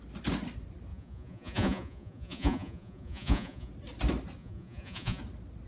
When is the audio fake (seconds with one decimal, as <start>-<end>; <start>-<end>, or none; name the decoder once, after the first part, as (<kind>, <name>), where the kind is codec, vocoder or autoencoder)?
0.9-3.7 (vocoder, Vocos); 4.4-5.2